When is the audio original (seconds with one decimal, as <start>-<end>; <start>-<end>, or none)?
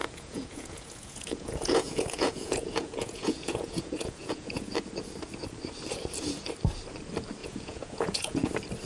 4.7-7.4; 8.5-8.9